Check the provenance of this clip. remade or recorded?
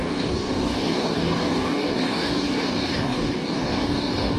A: remade